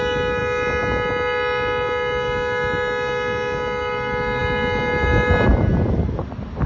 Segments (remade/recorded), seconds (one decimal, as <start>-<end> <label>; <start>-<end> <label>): 0.0-6.7 recorded